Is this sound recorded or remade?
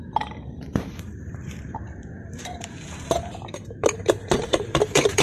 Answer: remade